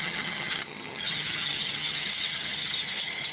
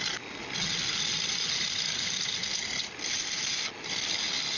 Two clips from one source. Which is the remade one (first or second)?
first